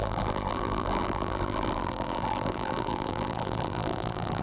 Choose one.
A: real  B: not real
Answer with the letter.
B